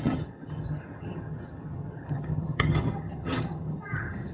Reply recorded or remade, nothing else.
remade